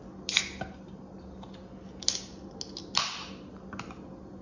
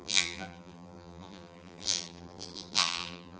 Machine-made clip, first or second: second